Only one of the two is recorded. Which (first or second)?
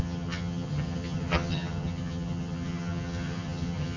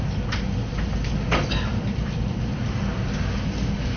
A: second